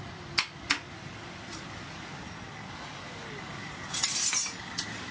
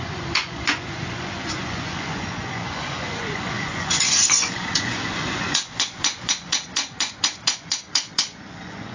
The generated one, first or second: second